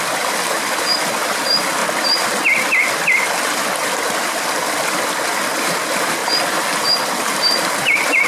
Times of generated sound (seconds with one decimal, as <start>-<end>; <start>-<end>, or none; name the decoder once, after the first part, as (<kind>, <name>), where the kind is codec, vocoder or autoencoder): 0.0-1.8 (vocoder, BigVGAN v2); 4.2-6.2; 7.7-8.3